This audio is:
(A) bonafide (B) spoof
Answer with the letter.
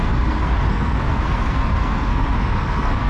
B